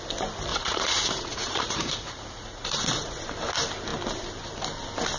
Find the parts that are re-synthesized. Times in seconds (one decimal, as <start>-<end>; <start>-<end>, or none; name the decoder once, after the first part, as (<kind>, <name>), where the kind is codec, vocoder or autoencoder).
0.5-3.2 (vocoder, Vocos)

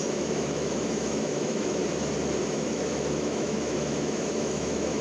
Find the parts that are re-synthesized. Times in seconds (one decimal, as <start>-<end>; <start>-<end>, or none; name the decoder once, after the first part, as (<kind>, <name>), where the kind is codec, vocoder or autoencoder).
0.0-1.8 (autoencoder, DAC-VAE); 2.4-5.0

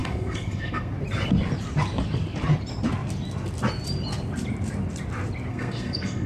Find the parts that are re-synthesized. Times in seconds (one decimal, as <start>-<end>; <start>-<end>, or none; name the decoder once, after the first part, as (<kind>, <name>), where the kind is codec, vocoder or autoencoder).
0.0-0.9 (codec, SNAC); 5.5-6.3

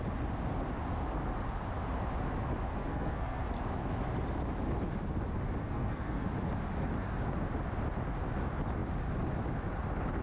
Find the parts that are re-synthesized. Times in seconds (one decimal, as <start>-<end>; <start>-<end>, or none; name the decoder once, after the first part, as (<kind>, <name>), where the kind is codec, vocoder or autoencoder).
2.7-3.4 (codec, SNAC); 5.6-6.3

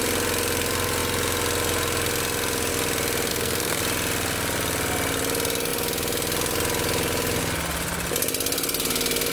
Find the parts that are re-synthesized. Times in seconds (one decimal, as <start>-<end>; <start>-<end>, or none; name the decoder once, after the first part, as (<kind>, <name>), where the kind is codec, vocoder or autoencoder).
3.3-3.8 (codec, SNAC)